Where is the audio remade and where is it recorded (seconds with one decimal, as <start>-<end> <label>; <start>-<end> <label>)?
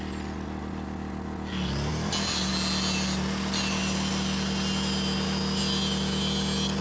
0.0-6.8 recorded